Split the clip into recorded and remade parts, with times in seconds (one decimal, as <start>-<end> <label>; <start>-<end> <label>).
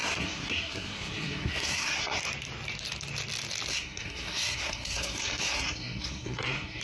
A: 0.0-2.2 remade; 2.2-3.7 recorded; 3.7-6.8 remade